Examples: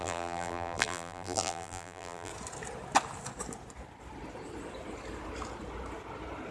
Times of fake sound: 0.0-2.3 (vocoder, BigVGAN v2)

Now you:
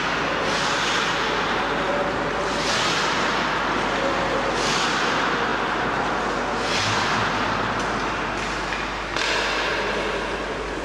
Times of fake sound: 5.5-6.2 (vocoder, BigVGAN v2)

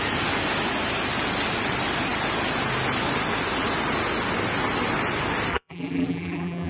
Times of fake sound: 5.5-6.7 (vocoder, BigVGAN v2)

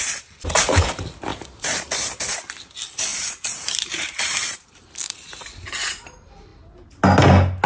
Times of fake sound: 1.3-2.2 (vocoder, BigVGAN v2); 3.1-5.3